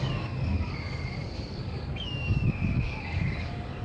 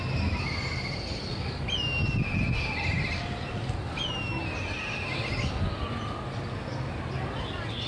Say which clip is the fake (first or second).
first